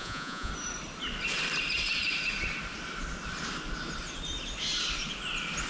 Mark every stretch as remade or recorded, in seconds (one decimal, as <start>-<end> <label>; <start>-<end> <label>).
0.0-0.5 remade; 0.5-5.7 recorded